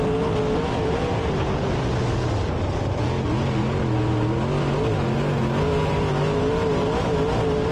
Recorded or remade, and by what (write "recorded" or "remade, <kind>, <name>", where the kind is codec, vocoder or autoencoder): recorded